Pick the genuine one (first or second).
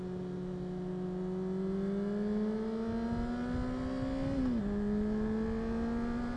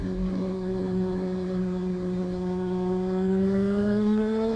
first